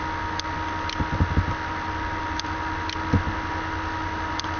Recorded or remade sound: recorded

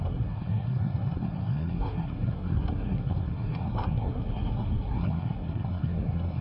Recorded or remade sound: remade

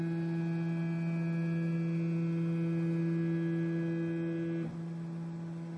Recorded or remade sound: recorded